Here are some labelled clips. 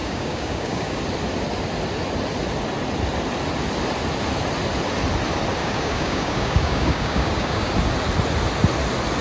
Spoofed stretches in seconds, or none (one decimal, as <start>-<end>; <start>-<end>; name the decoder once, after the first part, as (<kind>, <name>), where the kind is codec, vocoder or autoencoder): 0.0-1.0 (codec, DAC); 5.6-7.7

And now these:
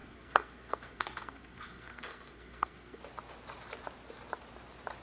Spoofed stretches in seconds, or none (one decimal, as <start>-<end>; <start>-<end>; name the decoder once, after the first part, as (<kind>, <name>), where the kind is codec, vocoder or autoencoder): 0.0-3.0 (codec, SNAC)

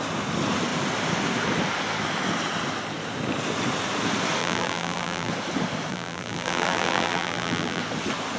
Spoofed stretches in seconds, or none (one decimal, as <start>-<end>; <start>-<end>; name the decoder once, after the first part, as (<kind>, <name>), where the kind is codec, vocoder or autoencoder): 4.4-5.3 (vocoder, BigVGAN v2); 5.9-7.8

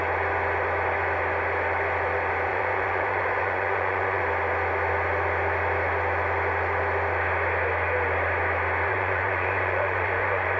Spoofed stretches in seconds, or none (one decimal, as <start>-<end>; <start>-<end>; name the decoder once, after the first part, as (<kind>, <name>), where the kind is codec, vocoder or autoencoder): 2.5-4.2 (vocoder, Vocos); 8.9-10.6

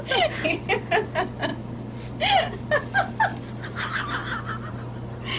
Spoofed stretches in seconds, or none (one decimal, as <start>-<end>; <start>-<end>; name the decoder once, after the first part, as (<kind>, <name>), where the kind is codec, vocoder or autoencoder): none

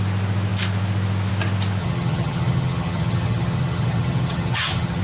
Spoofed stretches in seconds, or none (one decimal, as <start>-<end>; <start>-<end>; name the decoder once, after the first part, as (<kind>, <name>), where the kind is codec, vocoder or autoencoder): 1.8-5.0 (vocoder, HiFi-GAN)